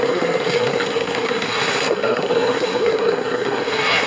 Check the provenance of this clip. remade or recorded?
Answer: remade